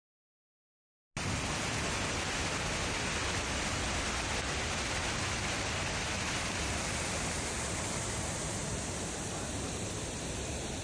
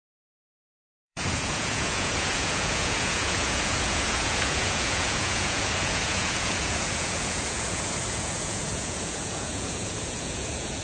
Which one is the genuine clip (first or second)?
first